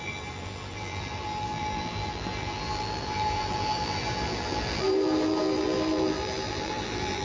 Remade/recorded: remade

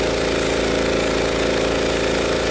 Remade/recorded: recorded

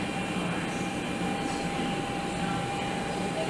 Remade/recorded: recorded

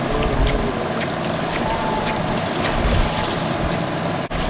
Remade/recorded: recorded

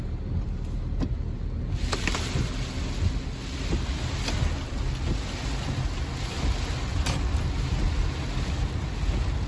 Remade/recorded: recorded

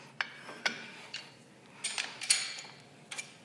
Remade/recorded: recorded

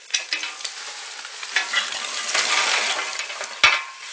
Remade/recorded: recorded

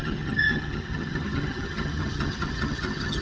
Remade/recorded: remade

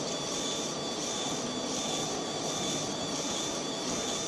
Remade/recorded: recorded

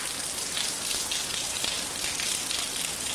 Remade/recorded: recorded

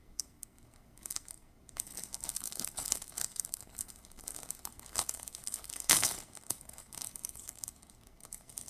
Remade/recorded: remade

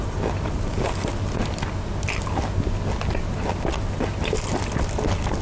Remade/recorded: recorded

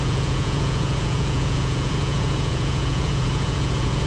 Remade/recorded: remade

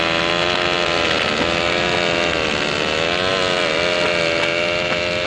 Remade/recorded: recorded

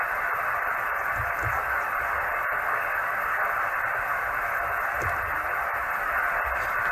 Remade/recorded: remade